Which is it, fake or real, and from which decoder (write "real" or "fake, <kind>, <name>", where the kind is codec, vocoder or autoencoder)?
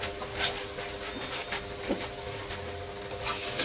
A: real